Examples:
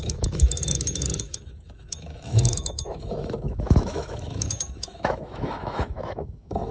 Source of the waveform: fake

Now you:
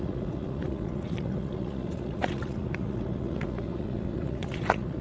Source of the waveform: fake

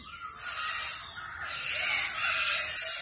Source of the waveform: real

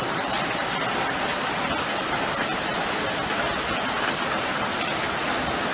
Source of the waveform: real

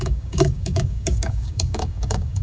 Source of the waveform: fake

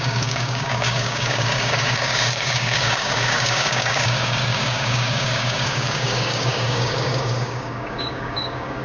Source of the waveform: fake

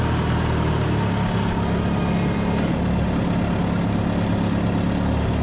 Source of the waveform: real